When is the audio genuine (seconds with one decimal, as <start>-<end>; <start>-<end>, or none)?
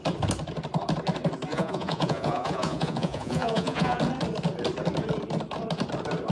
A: 0.0-1.5; 4.0-6.3